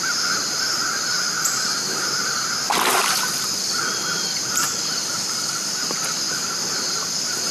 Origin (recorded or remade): recorded